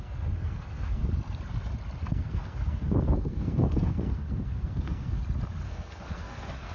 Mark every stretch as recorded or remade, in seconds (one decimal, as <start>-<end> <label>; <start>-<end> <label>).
0.0-1.0 remade; 1.0-2.1 recorded; 2.1-5.2 remade; 5.2-5.7 recorded; 5.7-6.7 remade